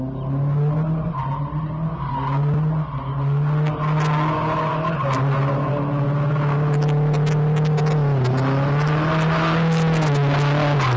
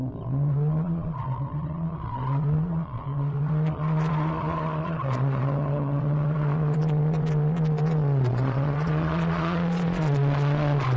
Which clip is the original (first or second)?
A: first